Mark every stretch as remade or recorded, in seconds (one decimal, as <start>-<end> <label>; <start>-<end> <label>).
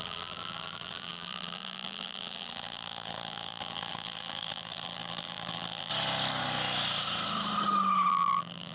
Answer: 0.0-5.9 remade; 5.9-8.1 recorded; 8.1-8.7 remade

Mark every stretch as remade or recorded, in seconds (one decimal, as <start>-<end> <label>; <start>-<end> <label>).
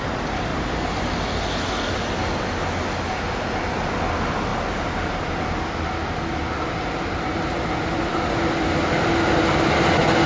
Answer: 0.0-0.5 recorded; 0.5-1.1 remade; 1.1-4.5 recorded; 4.5-5.2 remade; 5.2-10.3 recorded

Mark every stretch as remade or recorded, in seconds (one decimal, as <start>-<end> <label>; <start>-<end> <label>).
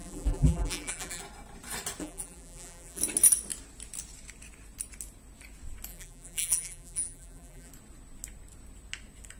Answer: 0.0-1.2 remade; 1.2-2.0 recorded; 2.0-3.0 remade; 3.0-5.9 recorded; 5.9-7.7 remade; 7.7-9.4 recorded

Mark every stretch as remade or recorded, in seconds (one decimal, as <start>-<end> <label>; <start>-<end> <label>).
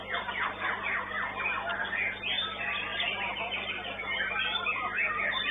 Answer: 0.0-5.5 recorded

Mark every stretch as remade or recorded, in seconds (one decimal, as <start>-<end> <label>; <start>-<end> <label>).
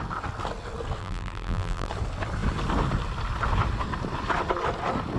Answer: 0.0-1.0 recorded; 1.0-1.9 remade; 1.9-5.2 recorded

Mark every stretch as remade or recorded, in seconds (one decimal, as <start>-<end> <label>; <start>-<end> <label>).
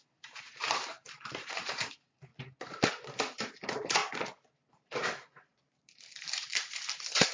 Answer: 0.0-2.3 remade; 2.3-2.9 recorded; 2.9-4.0 remade; 4.0-4.6 recorded; 4.6-7.3 remade